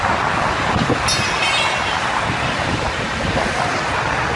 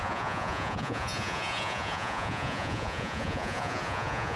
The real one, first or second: first